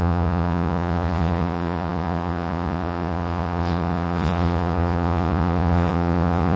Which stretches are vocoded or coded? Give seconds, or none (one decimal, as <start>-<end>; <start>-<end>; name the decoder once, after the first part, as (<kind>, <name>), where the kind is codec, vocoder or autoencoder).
0.0-6.6 (vocoder, Vocos)